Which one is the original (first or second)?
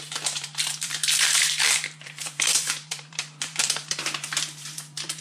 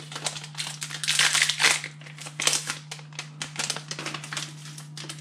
second